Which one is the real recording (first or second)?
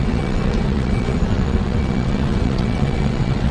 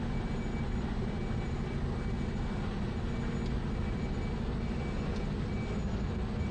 second